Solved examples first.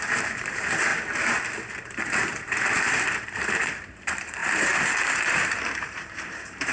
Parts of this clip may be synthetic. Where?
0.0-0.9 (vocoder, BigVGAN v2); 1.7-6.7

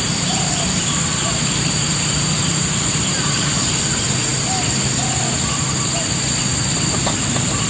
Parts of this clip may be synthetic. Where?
0.0-4.3 (vocoder, BigVGAN v2); 6.9-7.7

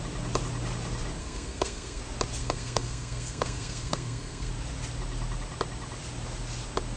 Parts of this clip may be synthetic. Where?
1.2-2.0 (codec, SNAC); 2.4-4.5

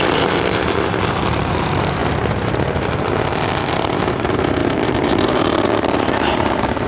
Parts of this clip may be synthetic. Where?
0.0-2.0 (vocoder, BigVGAN v2); 3.7-6.9

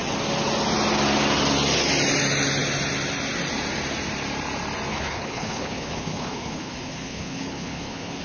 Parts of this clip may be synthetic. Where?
4.9-8.2 (codec, HILCodec)

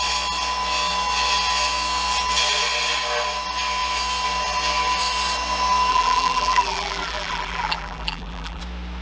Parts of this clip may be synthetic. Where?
5.9-8.6 (vocoder, BigVGAN v2)

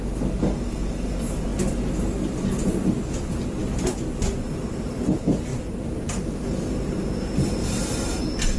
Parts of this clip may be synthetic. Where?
7.6-8.2 (vocoder, BigVGAN v2)

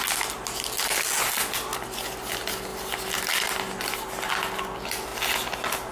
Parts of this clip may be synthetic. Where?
none